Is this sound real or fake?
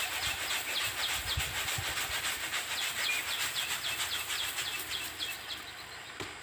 real